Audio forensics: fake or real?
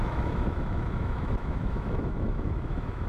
fake